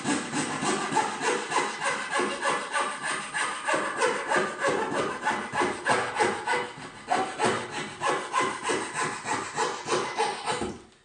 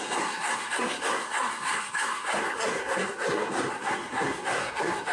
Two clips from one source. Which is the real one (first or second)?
first